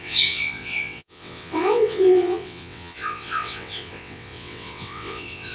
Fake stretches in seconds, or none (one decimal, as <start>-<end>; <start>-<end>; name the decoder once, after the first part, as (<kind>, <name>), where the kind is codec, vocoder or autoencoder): 0.0-5.5 (vocoder, WaveNeXt)